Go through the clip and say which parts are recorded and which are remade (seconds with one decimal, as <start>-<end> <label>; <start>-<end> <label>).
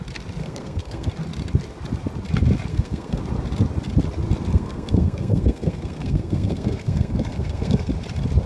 0.0-0.4 recorded; 0.4-1.1 remade; 1.1-2.7 recorded; 2.7-3.2 remade; 3.2-4.5 recorded; 4.5-7.9 remade; 7.9-8.5 recorded